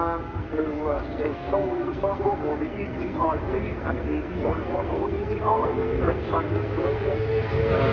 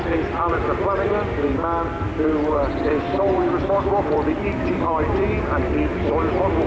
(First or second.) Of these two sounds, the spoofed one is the first